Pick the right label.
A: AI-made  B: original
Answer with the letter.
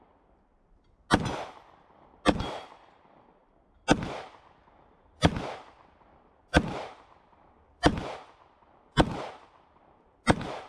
B